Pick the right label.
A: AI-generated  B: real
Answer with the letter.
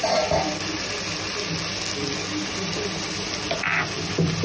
B